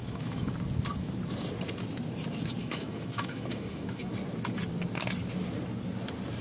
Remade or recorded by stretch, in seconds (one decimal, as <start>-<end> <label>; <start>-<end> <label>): 0.0-0.5 remade; 0.5-2.6 recorded; 2.6-4.1 remade; 4.1-6.4 recorded